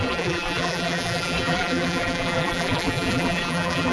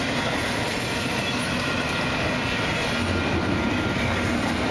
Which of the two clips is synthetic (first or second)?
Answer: first